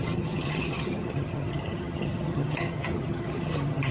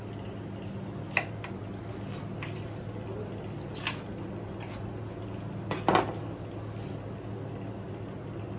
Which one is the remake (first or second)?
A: first